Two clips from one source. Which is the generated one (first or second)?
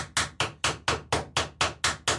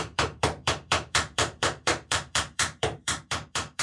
second